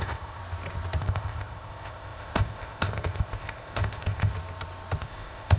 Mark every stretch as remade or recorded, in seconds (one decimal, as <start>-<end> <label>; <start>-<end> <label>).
0.0-0.4 remade; 0.4-1.0 recorded; 1.0-4.3 remade; 4.3-5.0 recorded; 5.0-5.6 remade